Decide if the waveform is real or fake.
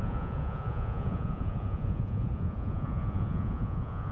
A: fake